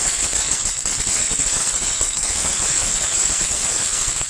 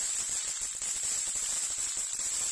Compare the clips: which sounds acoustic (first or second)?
second